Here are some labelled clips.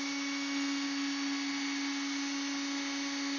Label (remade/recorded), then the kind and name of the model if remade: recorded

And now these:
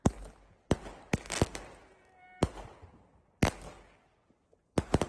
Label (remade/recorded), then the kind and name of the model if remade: recorded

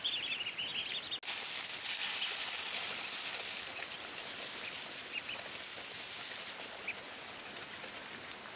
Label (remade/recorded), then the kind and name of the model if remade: recorded